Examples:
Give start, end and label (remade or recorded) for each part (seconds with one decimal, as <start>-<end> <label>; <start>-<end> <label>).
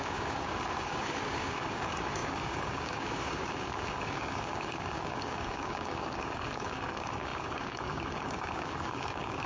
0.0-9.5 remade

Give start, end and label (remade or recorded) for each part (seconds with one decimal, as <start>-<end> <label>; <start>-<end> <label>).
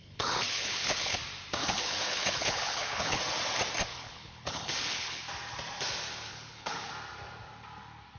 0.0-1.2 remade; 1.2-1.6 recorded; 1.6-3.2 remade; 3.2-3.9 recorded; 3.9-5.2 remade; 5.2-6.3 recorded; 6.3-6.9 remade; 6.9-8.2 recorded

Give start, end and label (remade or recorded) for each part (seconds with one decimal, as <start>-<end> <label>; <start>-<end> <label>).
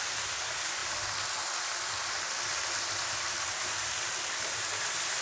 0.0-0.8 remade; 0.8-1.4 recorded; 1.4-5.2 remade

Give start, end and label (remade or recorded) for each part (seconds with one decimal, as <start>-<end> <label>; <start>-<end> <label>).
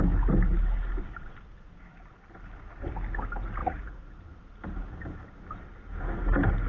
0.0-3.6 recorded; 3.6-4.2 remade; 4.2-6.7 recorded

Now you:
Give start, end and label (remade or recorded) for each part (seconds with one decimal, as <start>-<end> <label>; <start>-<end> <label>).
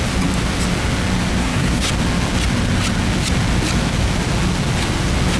0.0-1.4 recorded; 1.4-1.9 remade; 1.9-5.4 recorded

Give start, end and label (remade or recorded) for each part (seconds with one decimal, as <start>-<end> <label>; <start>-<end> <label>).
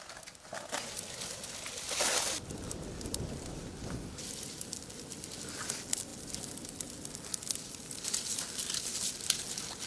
0.0-9.9 recorded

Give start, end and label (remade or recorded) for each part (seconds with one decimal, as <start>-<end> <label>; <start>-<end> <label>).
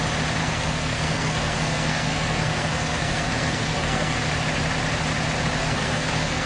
0.0-0.4 recorded; 0.4-4.3 remade; 4.3-5.6 recorded; 5.6-6.5 remade